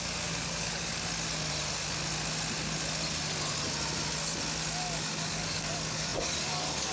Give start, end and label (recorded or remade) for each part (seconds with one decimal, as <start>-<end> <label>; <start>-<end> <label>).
0.0-0.9 remade; 0.9-5.0 recorded; 5.0-6.9 remade